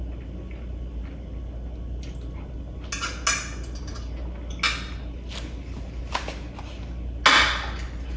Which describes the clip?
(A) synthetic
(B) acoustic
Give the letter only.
B